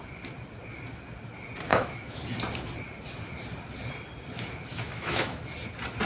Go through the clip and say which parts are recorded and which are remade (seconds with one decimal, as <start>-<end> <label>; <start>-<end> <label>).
0.0-1.7 recorded; 1.7-2.2 remade; 2.2-4.7 recorded; 4.7-5.4 remade; 5.4-6.1 recorded